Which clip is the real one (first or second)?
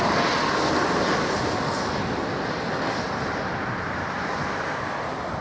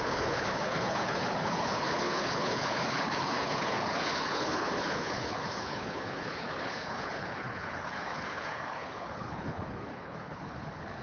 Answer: first